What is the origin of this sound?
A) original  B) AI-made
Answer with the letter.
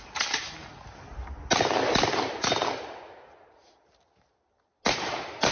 A